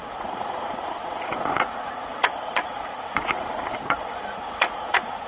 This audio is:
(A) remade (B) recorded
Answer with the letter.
A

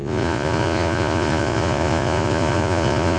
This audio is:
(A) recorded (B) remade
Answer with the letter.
B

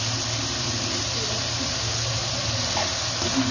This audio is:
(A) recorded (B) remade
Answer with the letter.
A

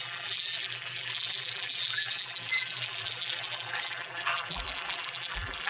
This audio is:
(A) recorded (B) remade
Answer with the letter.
B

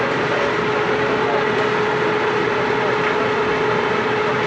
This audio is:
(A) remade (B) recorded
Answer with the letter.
B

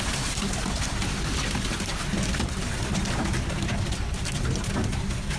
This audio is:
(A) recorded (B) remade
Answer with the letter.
A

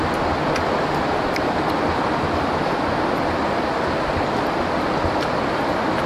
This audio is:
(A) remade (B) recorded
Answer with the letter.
B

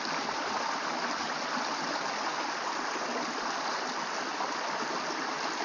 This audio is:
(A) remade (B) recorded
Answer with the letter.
B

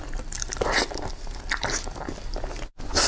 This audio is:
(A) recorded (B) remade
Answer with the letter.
A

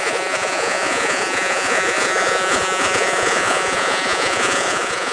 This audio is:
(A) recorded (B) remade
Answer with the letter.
B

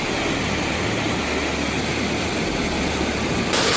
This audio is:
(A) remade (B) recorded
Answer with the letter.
B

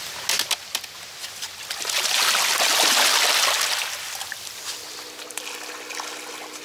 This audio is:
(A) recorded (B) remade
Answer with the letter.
A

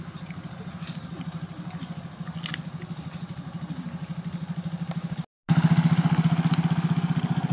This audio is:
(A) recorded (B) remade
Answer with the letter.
A